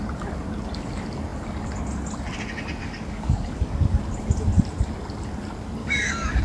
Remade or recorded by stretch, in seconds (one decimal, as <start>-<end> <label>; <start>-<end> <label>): 0.0-2.8 recorded; 2.8-4.0 remade; 4.0-5.8 recorded; 5.8-6.4 remade